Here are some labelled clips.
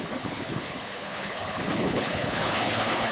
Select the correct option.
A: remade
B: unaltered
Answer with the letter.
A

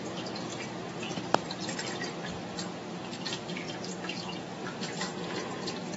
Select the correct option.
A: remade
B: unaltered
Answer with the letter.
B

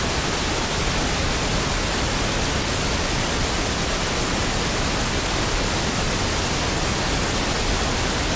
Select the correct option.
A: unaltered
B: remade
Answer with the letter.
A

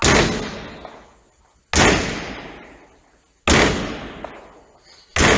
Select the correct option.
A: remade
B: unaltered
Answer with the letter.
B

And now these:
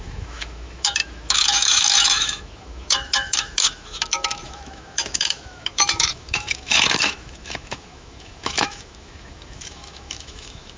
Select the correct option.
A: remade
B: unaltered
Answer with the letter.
A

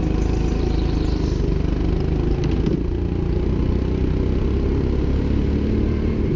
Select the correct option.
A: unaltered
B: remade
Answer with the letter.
A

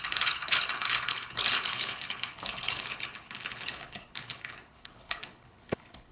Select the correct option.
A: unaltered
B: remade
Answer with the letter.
B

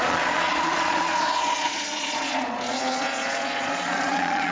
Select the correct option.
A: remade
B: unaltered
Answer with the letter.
A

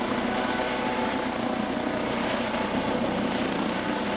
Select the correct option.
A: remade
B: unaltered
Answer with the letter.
B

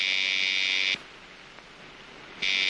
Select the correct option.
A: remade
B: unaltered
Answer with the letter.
B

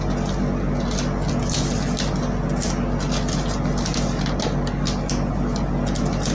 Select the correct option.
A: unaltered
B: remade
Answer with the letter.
A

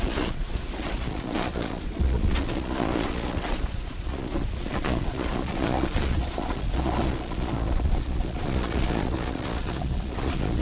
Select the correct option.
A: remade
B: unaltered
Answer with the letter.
A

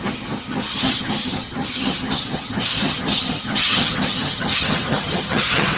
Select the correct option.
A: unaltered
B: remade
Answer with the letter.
B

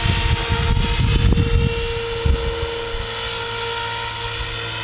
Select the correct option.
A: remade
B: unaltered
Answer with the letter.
B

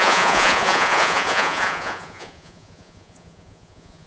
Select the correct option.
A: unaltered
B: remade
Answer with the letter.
B